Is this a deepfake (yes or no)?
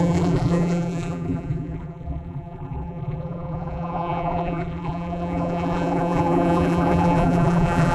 yes